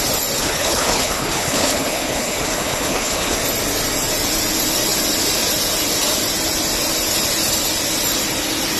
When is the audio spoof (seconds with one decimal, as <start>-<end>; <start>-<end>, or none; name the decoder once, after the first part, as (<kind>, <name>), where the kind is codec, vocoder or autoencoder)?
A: 0.4-3.4 (codec, HILCodec)